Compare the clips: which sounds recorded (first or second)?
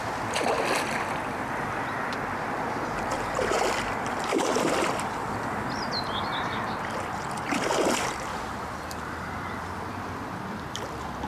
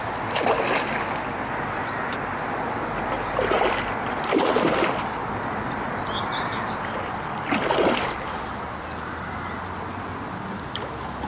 second